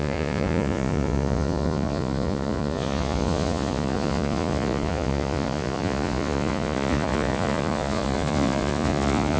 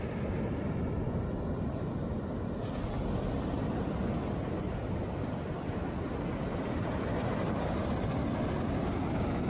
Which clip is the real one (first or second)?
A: second